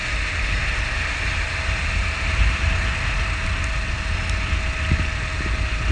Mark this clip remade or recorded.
recorded